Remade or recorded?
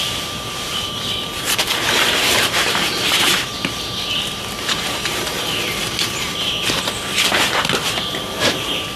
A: remade